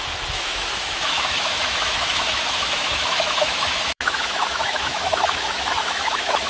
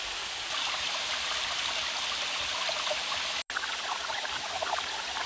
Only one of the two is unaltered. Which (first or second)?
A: second